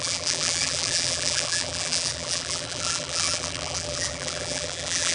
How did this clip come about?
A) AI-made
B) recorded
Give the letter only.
A